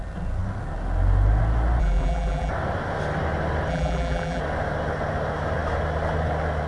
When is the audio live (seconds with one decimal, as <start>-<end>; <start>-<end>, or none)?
0.0-1.8; 2.5-3.7; 4.4-6.7